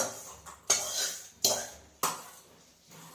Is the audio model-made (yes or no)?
no